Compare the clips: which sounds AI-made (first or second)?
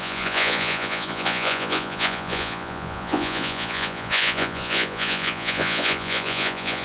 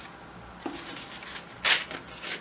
first